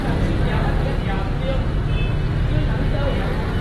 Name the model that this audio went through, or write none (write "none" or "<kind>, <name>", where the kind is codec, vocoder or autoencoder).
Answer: none